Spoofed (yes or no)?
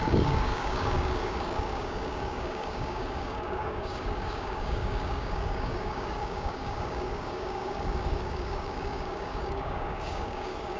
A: yes